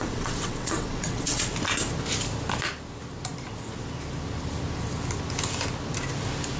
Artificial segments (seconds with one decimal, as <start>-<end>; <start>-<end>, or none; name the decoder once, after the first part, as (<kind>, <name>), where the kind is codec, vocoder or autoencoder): 0.0-1.5 (vocoder, WaveNeXt)

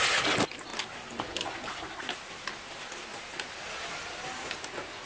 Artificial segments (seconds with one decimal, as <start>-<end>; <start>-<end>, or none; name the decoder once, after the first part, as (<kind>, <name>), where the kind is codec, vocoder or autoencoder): none

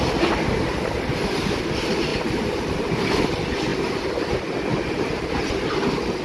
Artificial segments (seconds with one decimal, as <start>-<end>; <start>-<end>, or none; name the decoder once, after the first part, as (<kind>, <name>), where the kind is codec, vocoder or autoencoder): 2.1-3.3 (vocoder, BigVGAN v2); 4.7-5.4

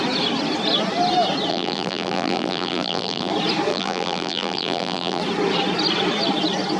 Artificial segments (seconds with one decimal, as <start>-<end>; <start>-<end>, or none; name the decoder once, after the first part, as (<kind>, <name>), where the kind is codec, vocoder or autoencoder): 1.5-3.3 (vocoder, BigVGAN v2); 3.7-5.2

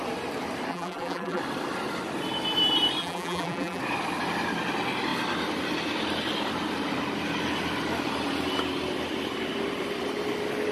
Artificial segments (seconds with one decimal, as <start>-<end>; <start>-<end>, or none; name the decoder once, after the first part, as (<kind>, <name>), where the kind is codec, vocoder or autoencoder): 0.7-1.4 (vocoder, BigVGAN v2); 3.0-3.8

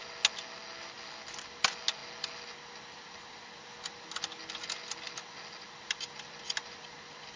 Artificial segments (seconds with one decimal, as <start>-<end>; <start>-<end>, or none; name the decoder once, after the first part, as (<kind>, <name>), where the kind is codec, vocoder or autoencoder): none

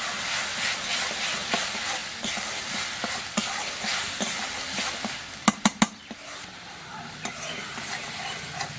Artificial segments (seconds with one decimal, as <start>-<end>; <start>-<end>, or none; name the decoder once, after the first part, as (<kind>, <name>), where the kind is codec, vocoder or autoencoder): none

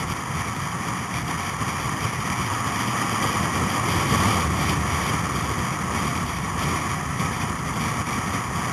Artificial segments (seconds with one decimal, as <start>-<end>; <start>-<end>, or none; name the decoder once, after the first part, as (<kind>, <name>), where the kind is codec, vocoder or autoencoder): 4.0-5.2 (vocoder, BigVGAN v2); 6.1-7.6